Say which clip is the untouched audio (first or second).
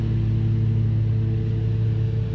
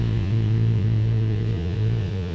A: first